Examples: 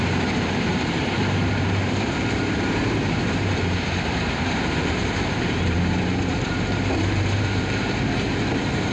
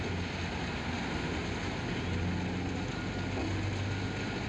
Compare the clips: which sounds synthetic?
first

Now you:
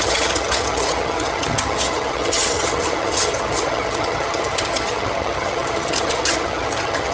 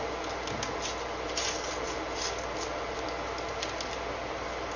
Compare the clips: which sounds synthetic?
first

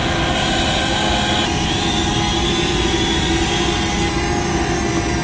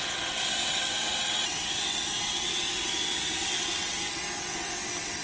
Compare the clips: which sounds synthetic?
second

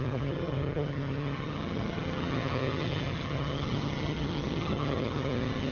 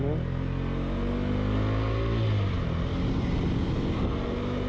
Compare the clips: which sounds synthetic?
first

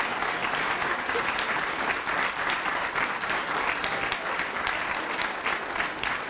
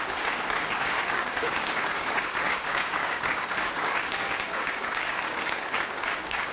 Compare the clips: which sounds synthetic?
second